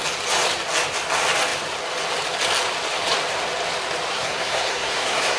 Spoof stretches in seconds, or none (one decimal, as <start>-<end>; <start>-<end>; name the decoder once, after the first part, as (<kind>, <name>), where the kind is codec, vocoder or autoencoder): 4.1-5.4 (codec, SNAC)